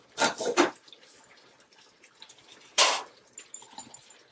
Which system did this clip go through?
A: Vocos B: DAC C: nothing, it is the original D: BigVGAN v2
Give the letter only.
C